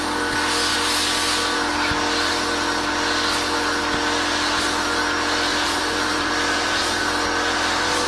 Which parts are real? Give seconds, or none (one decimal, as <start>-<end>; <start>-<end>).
0.0-5.5; 7.0-8.1